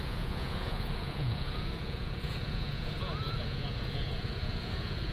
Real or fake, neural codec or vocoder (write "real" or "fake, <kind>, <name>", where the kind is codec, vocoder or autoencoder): fake, vocoder, Vocos